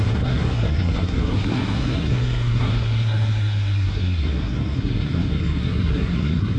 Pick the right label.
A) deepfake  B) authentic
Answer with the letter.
A